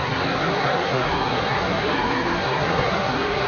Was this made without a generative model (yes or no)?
no